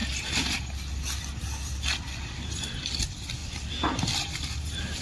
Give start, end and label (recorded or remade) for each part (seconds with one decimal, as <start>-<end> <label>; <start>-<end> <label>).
0.0-5.0 recorded